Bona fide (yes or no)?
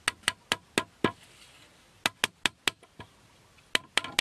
yes